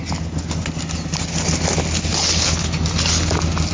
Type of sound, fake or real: real